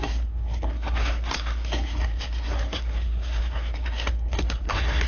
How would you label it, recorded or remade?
remade